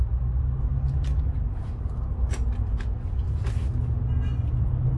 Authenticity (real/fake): real